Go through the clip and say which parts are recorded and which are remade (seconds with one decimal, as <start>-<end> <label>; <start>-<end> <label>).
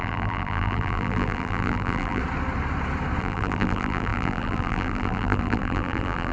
0.0-2.2 remade; 2.2-3.2 recorded; 3.2-6.3 remade